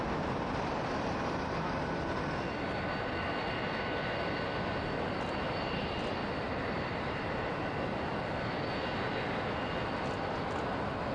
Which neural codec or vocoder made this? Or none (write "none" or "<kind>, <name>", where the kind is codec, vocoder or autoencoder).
none